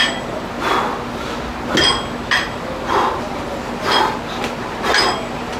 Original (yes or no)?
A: yes